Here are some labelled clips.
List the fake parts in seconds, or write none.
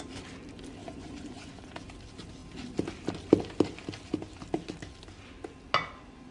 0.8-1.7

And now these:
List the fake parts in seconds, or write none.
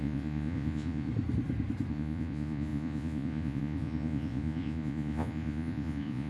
0.0-1.1; 1.9-6.3